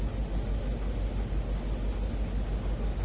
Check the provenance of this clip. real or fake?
real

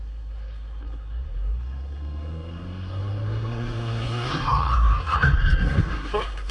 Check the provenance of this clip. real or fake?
fake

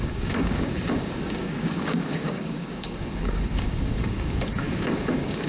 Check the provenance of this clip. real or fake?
fake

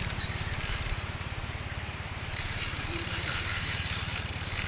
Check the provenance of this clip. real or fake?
fake